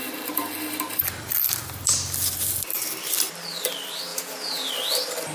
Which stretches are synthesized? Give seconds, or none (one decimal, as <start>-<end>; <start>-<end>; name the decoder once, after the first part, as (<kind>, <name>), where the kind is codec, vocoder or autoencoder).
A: 4.1-4.7 (vocoder, Vocos)